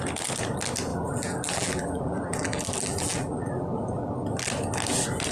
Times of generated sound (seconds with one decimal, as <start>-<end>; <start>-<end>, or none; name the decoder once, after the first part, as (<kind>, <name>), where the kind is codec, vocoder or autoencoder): 0.9-4.1 (vocoder, BigVGAN v2)